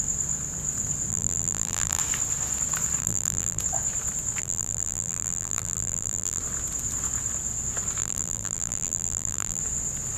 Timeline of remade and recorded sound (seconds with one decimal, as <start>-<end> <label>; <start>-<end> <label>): 0.0-1.1 recorded; 1.1-2.0 remade; 2.0-3.0 recorded; 3.0-3.6 remade; 3.6-4.4 recorded; 4.4-6.4 remade; 6.4-8.0 recorded; 8.0-9.6 remade; 9.6-10.2 recorded